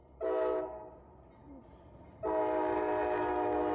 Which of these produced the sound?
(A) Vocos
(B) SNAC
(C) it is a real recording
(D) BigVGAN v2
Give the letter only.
C